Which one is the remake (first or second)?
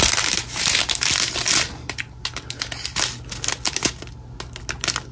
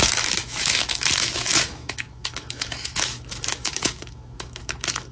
second